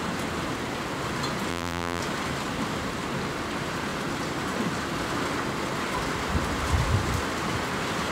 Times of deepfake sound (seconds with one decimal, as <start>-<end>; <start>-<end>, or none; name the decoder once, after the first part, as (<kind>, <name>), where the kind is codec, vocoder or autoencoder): 1.5-2.0 (vocoder, BigVGAN v2)